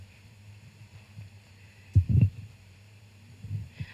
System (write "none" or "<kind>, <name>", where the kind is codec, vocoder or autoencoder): vocoder, BigVGAN v2